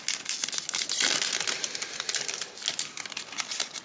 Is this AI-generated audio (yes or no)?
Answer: no